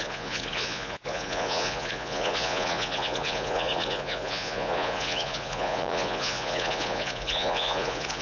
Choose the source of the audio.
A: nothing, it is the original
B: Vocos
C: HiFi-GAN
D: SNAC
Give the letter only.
B